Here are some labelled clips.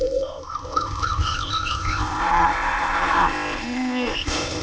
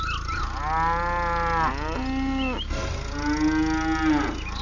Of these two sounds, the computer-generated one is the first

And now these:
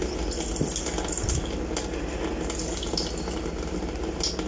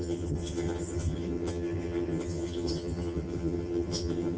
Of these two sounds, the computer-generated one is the second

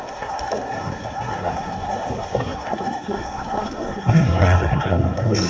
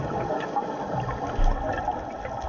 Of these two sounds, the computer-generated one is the first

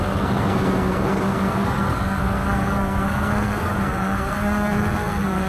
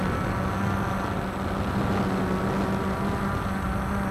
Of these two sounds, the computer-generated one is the first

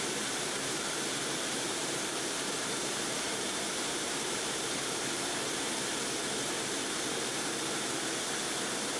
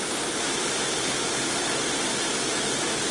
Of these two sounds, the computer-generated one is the first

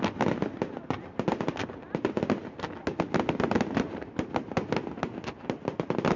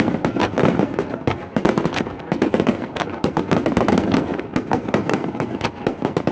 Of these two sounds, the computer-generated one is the second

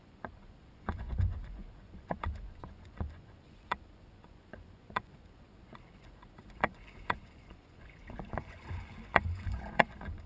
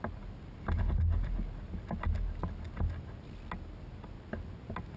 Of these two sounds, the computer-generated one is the first